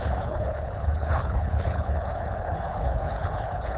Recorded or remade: remade